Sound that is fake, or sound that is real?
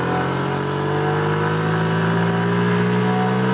real